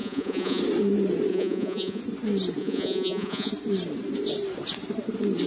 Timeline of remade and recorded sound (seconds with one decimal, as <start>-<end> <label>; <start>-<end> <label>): 0.0-0.6 remade; 0.6-1.3 recorded; 1.3-2.0 remade; 2.0-2.6 recorded; 2.6-3.5 remade; 3.5-5.5 recorded